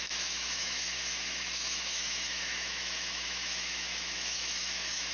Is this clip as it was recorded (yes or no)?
no